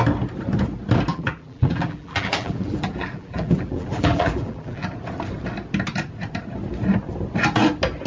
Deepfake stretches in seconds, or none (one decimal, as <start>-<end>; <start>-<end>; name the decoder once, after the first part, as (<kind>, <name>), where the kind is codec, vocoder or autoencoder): 1.1-4.9 (vocoder, BigVGAN v2)